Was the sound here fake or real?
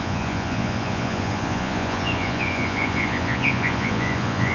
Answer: fake